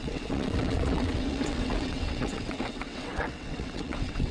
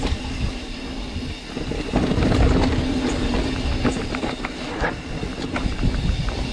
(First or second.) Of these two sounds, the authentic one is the second